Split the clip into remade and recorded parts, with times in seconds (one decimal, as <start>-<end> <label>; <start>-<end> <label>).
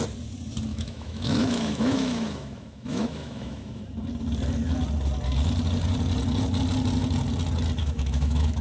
0.0-0.7 recorded; 0.7-3.8 remade; 3.8-7.8 recorded; 7.8-8.6 remade